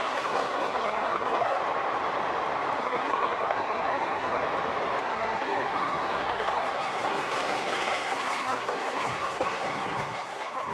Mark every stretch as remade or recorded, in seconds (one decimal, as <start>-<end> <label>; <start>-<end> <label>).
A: 0.0-1.6 remade; 1.6-2.8 recorded; 2.8-4.4 remade; 4.4-5.0 recorded; 5.0-10.7 remade